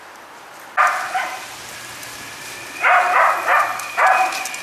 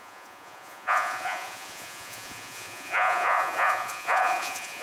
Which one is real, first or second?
first